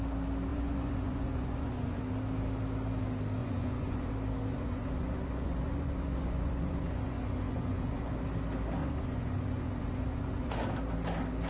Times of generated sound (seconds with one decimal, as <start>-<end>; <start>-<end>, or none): 0.5-2.0; 3.4-4.1; 4.5-8.1; 8.8-10.5